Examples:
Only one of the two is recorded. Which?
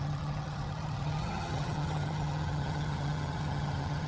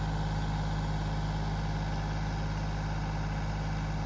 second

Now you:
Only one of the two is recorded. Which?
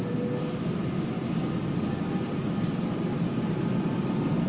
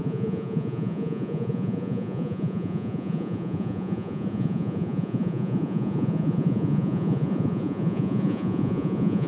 first